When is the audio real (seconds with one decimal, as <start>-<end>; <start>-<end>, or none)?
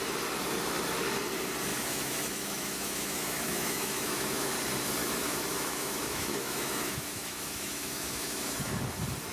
0.0-1.7; 4.5-5.0; 8.8-9.3